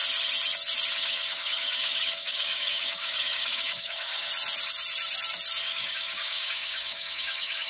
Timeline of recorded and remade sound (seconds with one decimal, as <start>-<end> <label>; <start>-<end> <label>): 0.0-0.9 recorded; 0.9-4.3 remade; 4.3-5.6 recorded; 5.6-7.7 remade